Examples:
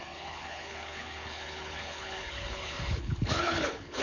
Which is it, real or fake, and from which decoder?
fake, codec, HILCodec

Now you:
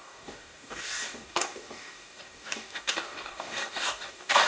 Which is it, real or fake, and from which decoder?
fake, codec, DAC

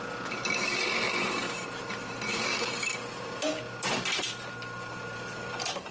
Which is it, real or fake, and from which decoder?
fake, vocoder, BigVGAN v2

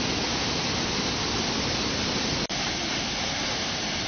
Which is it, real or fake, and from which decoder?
real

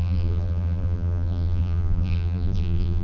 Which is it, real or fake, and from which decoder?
fake, vocoder, BigVGAN v2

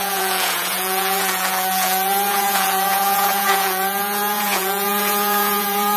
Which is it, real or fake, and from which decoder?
fake, vocoder, Vocos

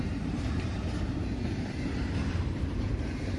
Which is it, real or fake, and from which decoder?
fake, vocoder, BigVGAN v2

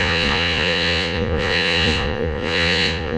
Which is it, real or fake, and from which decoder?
fake, vocoder, Vocos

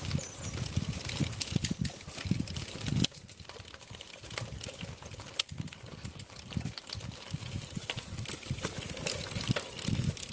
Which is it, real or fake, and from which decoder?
real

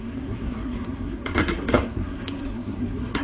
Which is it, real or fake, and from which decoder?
fake, codec, SNAC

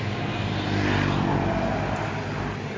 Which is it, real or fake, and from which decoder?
real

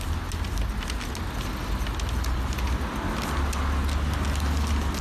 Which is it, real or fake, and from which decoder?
real